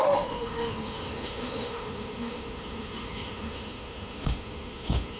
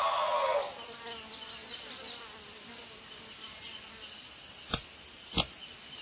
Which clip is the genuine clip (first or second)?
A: second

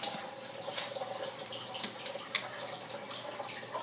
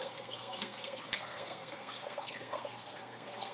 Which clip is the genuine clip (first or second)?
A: first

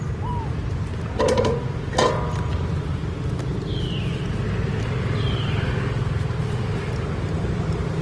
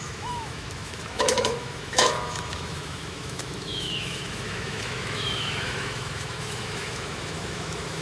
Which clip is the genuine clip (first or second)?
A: first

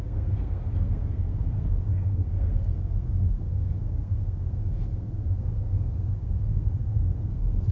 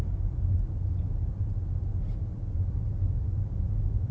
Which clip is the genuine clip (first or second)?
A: second